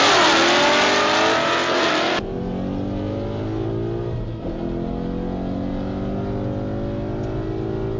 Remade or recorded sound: recorded